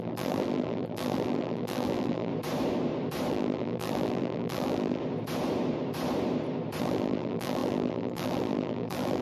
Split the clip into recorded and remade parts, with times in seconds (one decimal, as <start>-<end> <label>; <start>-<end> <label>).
0.0-2.3 remade; 2.3-3.3 recorded; 3.3-5.0 remade; 5.0-6.8 recorded; 6.8-9.2 remade